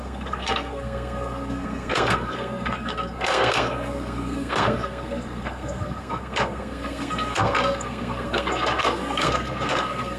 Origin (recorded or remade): remade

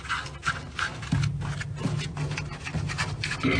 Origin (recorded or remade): recorded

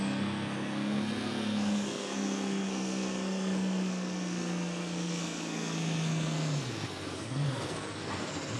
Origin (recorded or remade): remade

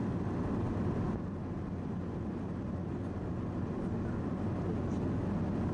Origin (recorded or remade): recorded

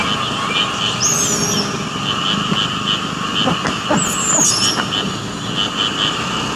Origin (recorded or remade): recorded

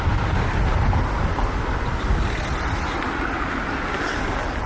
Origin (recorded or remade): recorded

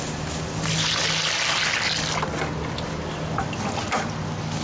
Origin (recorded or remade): recorded